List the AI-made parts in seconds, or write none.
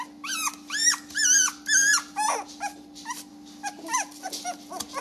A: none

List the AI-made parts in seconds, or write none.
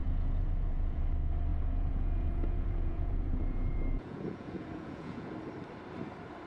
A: 0.0-1.1 (vocoder, Vocos); 1.5-5.3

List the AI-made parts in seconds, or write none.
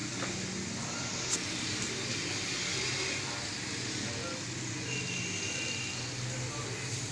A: none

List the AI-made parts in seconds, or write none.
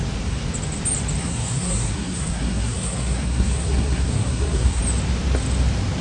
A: 1.2-4.8 (codec, SNAC)